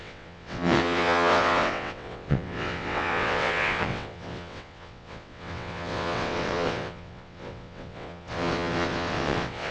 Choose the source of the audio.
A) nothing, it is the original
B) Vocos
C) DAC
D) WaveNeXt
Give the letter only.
D